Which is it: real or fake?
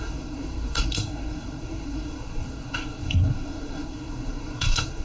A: fake